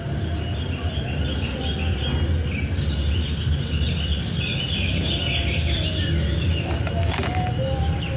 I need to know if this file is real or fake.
real